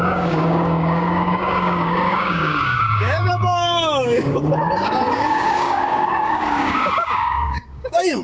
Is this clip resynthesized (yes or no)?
yes